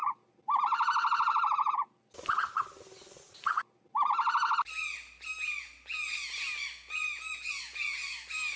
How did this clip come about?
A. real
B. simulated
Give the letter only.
A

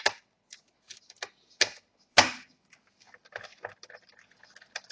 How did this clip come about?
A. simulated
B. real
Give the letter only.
B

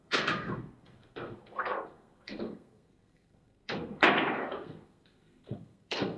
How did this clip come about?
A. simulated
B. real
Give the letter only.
A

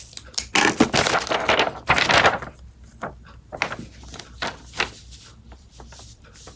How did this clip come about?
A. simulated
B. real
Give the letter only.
B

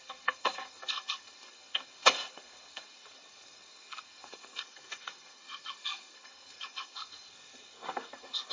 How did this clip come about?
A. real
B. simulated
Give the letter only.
B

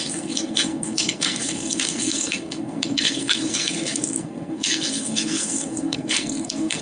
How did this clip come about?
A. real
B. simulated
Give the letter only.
B